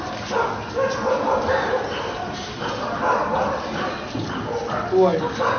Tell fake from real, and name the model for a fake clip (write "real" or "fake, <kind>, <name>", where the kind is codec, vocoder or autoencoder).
real